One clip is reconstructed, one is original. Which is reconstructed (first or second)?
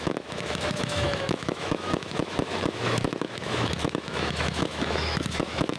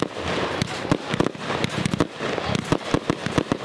first